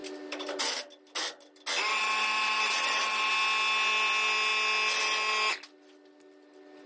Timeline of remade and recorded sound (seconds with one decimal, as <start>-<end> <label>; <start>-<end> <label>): 0.0-1.9 recorded; 1.9-3.3 remade; 3.3-6.9 recorded